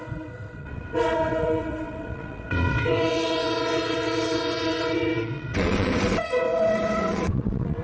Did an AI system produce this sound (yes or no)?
yes